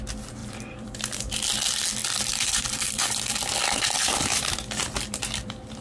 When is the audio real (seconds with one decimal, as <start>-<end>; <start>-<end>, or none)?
0.0-0.4; 1.2-2.0